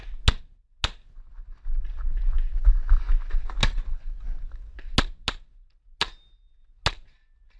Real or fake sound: real